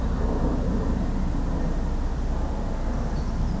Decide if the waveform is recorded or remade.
recorded